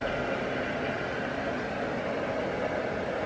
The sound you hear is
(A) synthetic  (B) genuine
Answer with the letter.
B